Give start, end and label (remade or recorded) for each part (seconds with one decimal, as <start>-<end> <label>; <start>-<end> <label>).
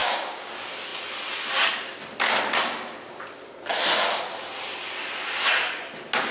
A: 0.0-0.5 remade; 0.5-6.3 recorded